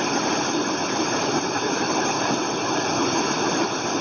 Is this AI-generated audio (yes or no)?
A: no